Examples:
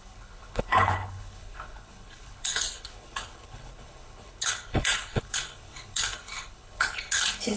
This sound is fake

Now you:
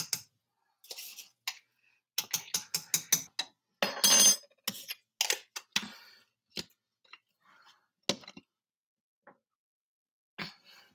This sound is real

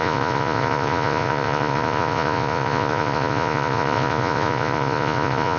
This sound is fake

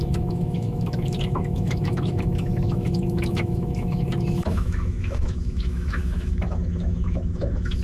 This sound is fake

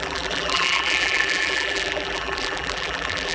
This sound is fake